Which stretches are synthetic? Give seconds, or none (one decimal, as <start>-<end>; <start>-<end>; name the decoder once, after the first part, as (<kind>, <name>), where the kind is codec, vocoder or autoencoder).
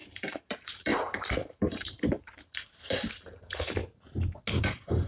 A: 0.0-3.8 (vocoder, BigVGAN v2); 4.6-5.1